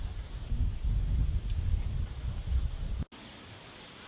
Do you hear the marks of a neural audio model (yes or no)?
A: no